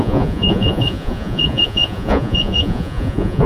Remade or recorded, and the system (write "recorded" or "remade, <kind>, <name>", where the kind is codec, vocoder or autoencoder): remade, vocoder, Vocos